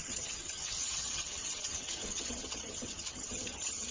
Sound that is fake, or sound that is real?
fake